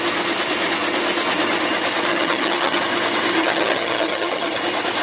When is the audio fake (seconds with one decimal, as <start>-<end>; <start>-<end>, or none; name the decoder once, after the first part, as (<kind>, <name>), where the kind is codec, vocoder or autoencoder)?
2.1-2.8 (vocoder, HiFi-GAN); 3.4-4.6